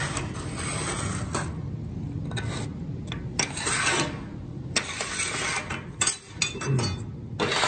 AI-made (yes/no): no